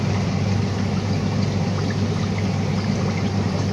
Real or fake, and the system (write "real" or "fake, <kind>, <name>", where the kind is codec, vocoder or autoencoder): real